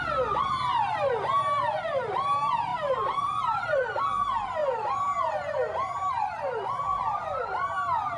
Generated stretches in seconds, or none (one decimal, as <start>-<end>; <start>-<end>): 2.7-4.0